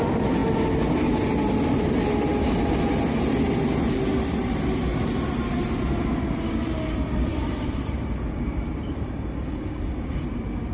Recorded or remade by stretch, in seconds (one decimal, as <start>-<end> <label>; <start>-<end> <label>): 0.0-4.9 recorded; 4.9-6.1 remade; 6.1-7.3 recorded; 7.3-10.7 remade